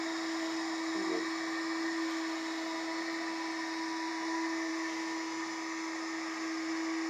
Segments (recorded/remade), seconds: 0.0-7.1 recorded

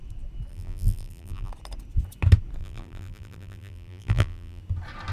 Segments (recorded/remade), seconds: 0.0-0.5 recorded; 0.5-1.5 remade; 1.5-2.6 recorded; 2.6-4.6 remade; 4.6-5.1 recorded